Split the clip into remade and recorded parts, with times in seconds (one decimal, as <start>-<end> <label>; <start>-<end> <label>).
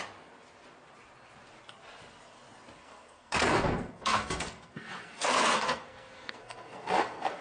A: 0.0-2.8 recorded; 2.8-7.4 remade